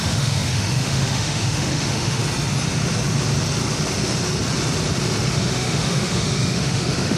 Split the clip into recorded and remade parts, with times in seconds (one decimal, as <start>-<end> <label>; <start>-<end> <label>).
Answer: 0.0-2.2 remade; 2.2-5.3 recorded; 5.3-7.2 remade